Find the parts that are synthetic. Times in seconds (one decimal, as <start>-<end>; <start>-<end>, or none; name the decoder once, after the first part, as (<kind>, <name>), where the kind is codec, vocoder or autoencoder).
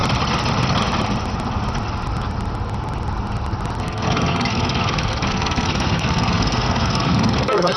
3.8-7.8 (codec, SNAC)